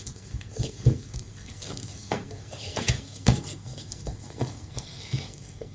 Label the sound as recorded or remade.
remade